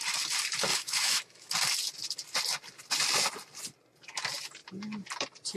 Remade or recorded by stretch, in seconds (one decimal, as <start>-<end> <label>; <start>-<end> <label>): 0.0-0.7 recorded; 0.7-1.5 remade; 1.5-5.6 recorded